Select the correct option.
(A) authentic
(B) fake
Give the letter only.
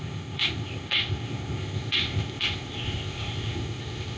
B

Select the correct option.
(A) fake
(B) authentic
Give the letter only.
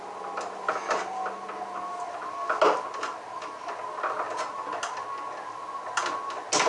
B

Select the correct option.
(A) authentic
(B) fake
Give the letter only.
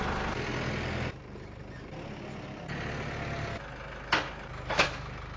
A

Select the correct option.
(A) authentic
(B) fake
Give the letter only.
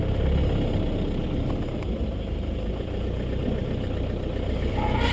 A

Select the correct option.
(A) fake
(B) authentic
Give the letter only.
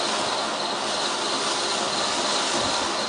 B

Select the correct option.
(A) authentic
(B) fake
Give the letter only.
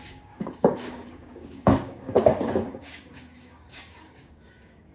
B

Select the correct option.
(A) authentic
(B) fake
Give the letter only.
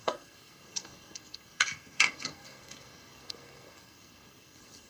B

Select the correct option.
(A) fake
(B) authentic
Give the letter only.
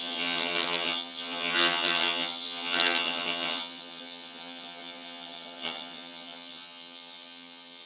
A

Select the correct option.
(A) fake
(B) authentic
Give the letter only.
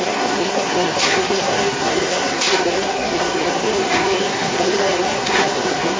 A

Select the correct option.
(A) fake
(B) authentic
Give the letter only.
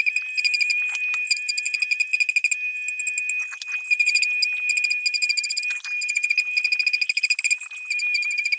B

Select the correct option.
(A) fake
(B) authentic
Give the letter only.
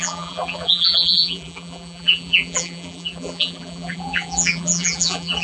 A